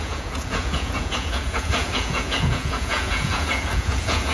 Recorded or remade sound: remade